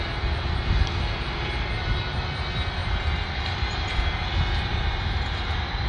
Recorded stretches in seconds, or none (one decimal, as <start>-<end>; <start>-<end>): 0.0-2.8; 4.0-4.7